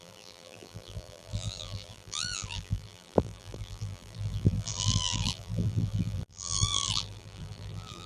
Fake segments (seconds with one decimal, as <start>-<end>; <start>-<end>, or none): 0.0-8.1